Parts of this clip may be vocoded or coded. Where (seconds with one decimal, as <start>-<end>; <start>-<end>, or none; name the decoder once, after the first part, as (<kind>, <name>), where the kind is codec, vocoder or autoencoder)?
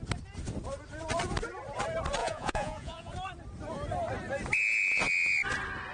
2.2-3.1 (vocoder, Vocos)